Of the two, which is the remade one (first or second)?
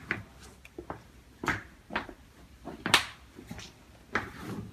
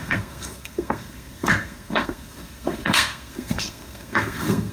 second